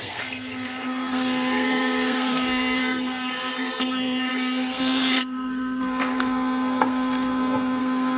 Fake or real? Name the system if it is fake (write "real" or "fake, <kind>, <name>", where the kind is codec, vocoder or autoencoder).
fake, codec, SNAC